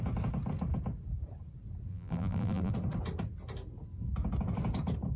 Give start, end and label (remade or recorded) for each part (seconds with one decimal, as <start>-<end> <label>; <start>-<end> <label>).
0.0-1.9 recorded; 1.9-2.7 remade; 2.7-5.2 recorded